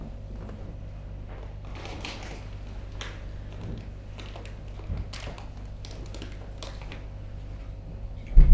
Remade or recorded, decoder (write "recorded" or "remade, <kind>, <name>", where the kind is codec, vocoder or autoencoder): recorded